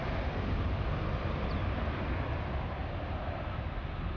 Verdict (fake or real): real